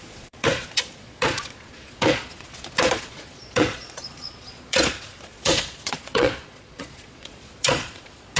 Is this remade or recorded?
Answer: remade